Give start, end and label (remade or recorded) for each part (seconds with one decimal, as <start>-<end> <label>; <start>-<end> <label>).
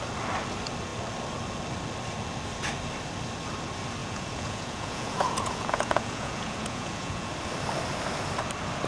0.0-4.0 recorded; 4.0-7.3 remade; 7.3-8.9 recorded